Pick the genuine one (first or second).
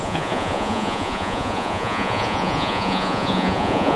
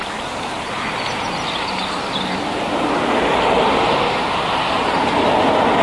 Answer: second